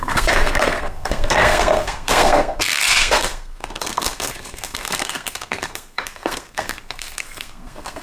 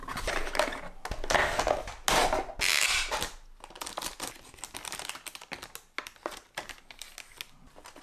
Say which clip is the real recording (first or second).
second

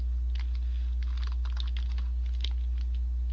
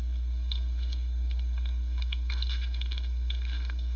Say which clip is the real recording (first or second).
first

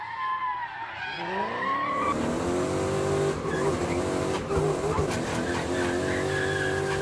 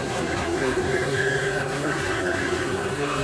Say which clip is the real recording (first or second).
first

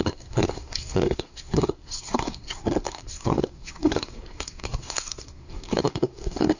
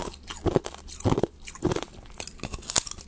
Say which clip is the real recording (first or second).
second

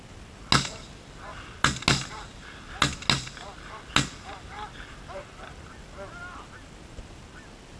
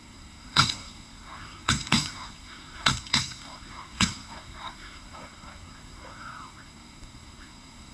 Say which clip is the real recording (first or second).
first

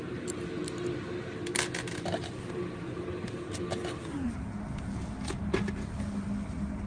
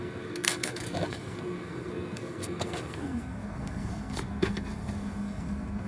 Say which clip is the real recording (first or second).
first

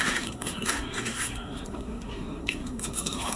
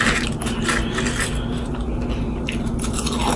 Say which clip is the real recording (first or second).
second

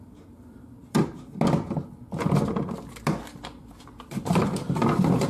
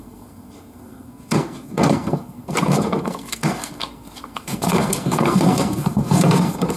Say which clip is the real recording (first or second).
first